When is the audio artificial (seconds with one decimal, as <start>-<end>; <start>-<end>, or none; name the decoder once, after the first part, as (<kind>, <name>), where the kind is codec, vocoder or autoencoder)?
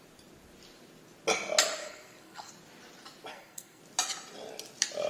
1.8-2.5 (codec, SNAC); 3.3-3.8